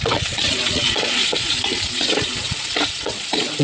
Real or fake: fake